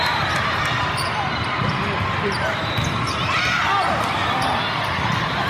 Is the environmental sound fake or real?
fake